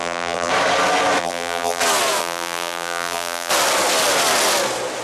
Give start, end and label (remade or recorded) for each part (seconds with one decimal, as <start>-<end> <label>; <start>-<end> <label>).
0.0-0.5 remade; 0.5-1.2 recorded; 1.2-1.8 remade; 1.8-2.2 recorded; 2.2-3.5 remade; 3.5-5.0 recorded